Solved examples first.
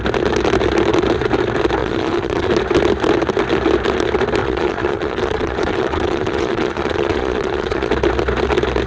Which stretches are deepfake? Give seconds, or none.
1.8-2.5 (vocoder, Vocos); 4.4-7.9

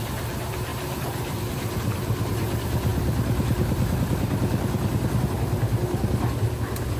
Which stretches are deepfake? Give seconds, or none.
0.7-1.4 (vocoder, BigVGAN v2); 2.9-5.2

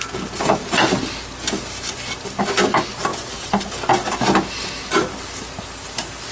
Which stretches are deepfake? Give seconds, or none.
none

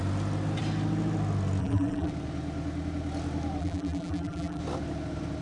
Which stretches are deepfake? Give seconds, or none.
1.6-2.1 (vocoder, BigVGAN v2); 3.6-4.6

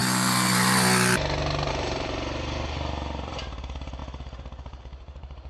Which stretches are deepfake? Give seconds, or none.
1.7-5.5 (vocoder, BigVGAN v2)